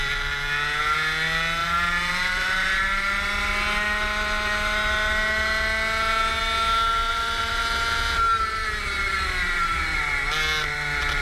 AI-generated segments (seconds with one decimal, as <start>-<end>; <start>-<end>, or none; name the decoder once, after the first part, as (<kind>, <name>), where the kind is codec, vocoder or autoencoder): 1.6-2.8 (vocoder, BigVGAN v2); 7.1-7.6